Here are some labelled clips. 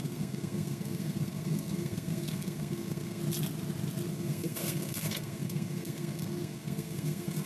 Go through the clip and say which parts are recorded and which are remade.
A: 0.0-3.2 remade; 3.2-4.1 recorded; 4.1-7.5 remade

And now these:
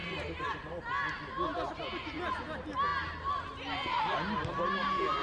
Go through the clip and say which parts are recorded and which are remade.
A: 0.0-0.8 remade; 0.8-5.2 recorded

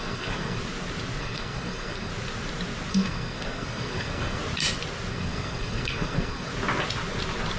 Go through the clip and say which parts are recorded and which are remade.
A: 0.0-0.6 remade; 0.6-1.2 recorded; 1.2-2.1 remade; 2.1-2.9 recorded; 2.9-4.4 remade; 4.4-5.1 recorded; 5.1-6.5 remade; 6.5-7.6 recorded

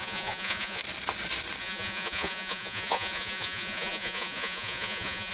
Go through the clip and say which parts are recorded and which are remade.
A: 0.0-0.8 remade; 0.8-1.6 recorded; 1.6-5.3 remade